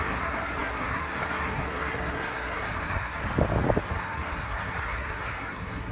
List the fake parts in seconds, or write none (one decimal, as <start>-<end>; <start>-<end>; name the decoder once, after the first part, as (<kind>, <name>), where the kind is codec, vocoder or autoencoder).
0.0-3.2 (codec, SNAC); 3.9-5.9